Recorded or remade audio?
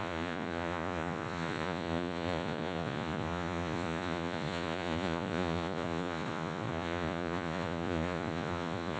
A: remade